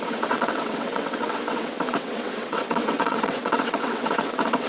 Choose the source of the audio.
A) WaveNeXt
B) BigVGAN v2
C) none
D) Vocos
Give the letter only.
A